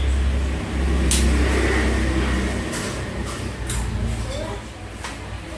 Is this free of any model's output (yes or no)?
yes